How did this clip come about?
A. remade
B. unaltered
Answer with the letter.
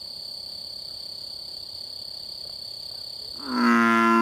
B